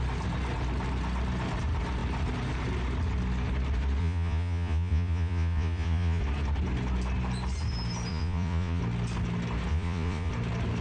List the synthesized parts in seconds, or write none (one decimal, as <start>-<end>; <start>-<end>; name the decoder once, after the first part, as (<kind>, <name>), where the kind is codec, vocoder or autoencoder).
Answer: 4.0-6.2 (vocoder, Vocos); 8.1-8.8; 9.7-10.3